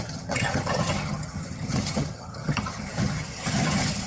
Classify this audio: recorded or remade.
remade